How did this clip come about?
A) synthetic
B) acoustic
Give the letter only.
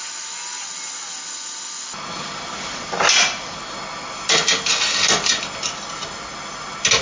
B